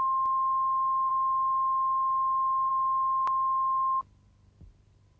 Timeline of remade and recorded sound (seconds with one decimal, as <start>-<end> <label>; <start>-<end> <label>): 0.0-5.2 recorded

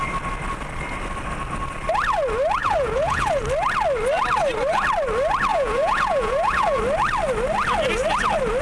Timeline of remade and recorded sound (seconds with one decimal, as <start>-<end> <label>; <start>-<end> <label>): 0.0-2.6 recorded; 2.6-3.4 remade; 3.4-5.5 recorded; 5.5-6.8 remade; 6.8-8.6 recorded

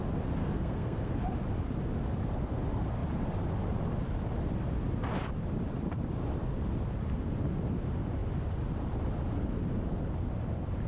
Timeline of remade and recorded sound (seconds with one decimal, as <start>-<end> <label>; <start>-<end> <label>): 0.0-0.4 recorded; 0.4-1.1 remade; 1.1-10.9 recorded

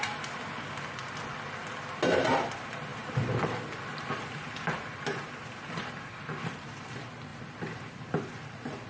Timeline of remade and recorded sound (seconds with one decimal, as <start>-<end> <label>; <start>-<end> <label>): 0.0-8.9 recorded

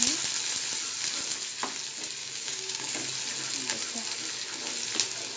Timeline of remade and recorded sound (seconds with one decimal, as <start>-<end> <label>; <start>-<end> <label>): 0.0-2.2 recorded; 2.2-3.0 remade; 3.0-5.4 recorded

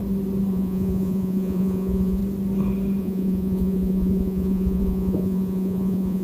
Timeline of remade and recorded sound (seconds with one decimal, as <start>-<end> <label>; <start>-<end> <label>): 0.0-0.5 recorded; 0.5-2.2 remade; 2.2-3.0 recorded; 3.0-6.2 remade